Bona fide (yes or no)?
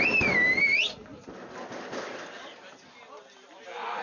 yes